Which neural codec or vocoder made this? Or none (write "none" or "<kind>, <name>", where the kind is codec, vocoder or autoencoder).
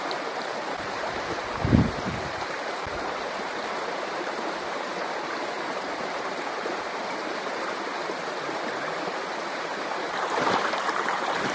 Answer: vocoder, BigVGAN v2